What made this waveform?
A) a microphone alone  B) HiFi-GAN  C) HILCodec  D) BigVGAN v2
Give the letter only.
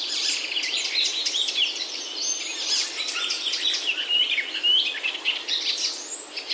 A